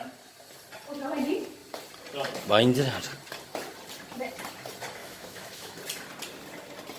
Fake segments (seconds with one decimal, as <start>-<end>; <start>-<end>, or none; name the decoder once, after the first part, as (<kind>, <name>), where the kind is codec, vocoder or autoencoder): 5.0-5.8 (autoencoder, DAC-VAE)